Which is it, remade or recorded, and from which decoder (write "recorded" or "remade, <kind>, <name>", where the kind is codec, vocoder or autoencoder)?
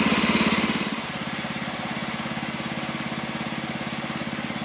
recorded